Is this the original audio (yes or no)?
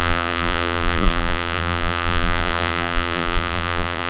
no